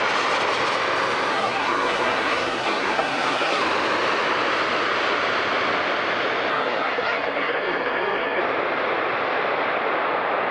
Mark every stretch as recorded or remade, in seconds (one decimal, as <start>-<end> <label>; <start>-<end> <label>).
0.0-1.3 recorded; 1.3-3.6 remade; 3.6-6.5 recorded; 6.5-8.4 remade; 8.4-10.5 recorded